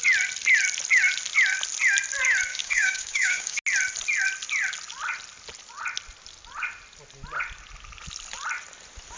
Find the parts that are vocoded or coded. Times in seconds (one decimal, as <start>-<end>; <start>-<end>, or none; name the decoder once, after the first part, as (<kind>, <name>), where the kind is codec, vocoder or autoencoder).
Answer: 2.5-3.6 (codec, DAC)

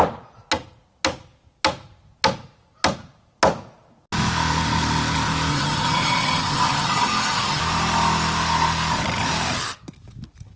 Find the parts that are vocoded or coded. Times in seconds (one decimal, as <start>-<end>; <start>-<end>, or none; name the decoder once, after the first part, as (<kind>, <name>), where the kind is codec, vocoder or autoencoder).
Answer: 5.5-7.6 (vocoder, HiFi-GAN)

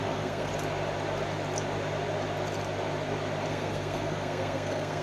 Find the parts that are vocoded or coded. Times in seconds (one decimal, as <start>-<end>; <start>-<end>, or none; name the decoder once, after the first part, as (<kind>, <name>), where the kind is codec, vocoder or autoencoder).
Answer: 0.0-0.5 (codec, SNAC); 3.5-5.0

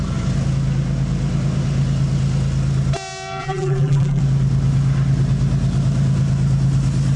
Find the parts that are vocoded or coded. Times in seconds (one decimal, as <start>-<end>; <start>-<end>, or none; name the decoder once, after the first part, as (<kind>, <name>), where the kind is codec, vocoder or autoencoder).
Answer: 3.4-4.2 (vocoder, BigVGAN v2)